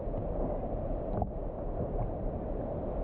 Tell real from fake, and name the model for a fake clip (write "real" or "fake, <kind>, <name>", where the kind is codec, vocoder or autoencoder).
real